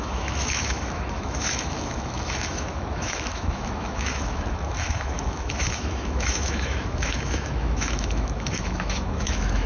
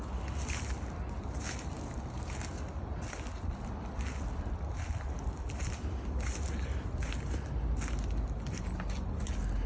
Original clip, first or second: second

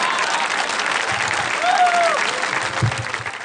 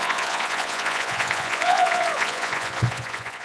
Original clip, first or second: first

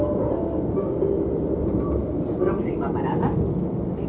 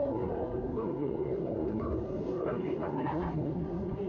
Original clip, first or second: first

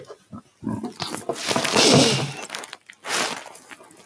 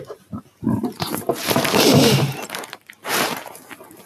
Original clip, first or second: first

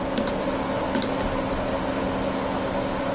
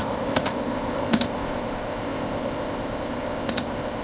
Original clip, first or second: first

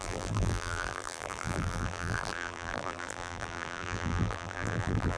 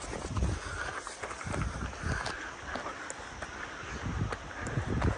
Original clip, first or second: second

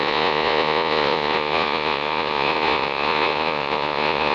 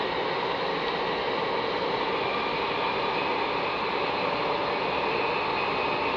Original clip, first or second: second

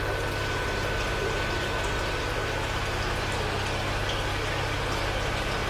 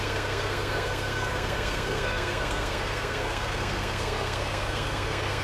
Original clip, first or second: first